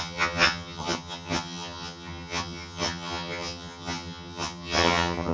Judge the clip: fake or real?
fake